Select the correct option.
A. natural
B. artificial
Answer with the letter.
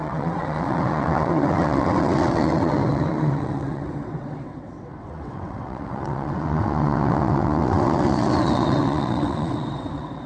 B